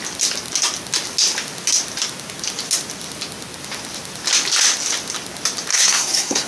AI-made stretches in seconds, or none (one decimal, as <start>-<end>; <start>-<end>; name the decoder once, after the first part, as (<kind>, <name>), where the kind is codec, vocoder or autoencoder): 5.7-6.5 (codec, SNAC)